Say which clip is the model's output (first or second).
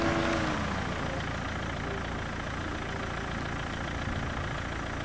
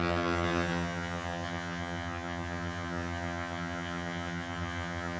second